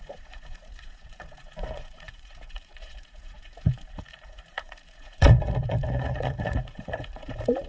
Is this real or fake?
fake